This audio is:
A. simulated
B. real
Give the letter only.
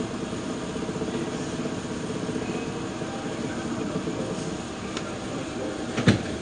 B